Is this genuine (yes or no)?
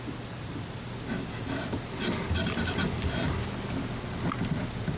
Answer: yes